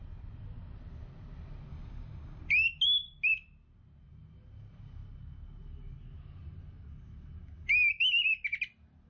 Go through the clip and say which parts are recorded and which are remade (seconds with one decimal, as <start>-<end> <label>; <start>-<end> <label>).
0.0-1.7 recorded; 1.7-2.4 remade; 2.4-9.1 recorded